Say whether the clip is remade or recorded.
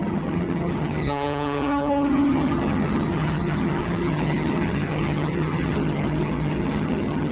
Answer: remade